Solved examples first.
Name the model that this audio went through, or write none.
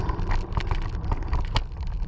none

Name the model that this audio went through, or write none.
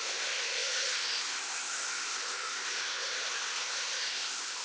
codec, ZipCodec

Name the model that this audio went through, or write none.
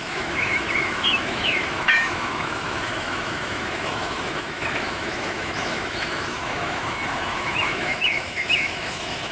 autoencoder, DAC-VAE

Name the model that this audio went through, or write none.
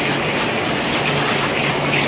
none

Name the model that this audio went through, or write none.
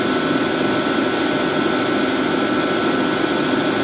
none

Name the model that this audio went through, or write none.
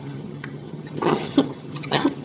vocoder, HiFi-GAN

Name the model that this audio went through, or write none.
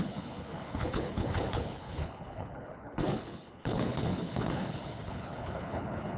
codec, HILCodec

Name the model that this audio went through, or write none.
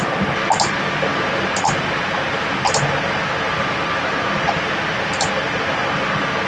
none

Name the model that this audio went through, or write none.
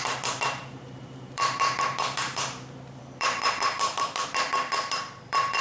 vocoder, BigVGAN v2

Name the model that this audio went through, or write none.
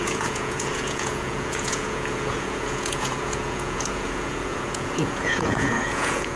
vocoder, Vocos